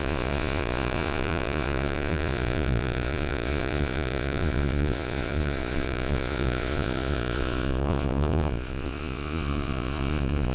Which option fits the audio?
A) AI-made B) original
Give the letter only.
A